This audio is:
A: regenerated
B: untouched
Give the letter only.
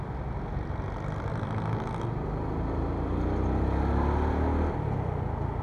B